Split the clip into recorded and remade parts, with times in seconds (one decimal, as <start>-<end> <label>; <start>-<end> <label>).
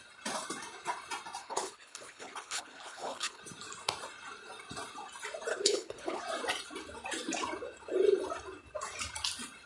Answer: 0.0-1.4 recorded; 1.4-3.4 remade; 3.4-5.5 recorded; 5.5-6.2 remade; 6.2-9.7 recorded